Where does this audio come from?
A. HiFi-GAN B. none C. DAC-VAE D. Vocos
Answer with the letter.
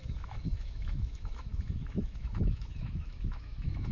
C